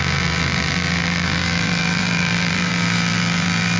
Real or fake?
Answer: fake